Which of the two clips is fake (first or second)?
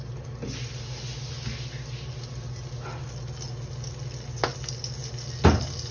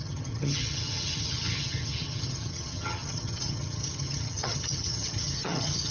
second